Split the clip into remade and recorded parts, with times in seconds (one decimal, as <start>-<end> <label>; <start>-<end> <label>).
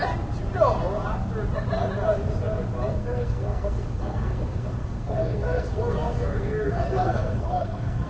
0.0-2.9 recorded; 2.9-8.1 remade